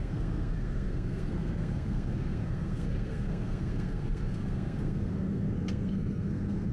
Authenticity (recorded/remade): remade